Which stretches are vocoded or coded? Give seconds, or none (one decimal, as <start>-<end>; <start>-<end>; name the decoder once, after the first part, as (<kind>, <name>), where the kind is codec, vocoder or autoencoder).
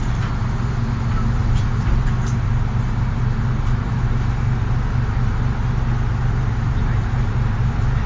none